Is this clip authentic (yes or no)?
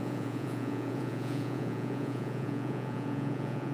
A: no